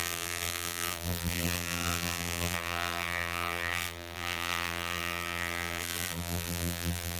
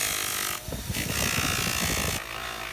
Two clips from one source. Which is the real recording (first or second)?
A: second